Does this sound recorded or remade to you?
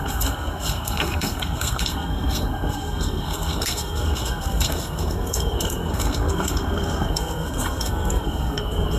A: remade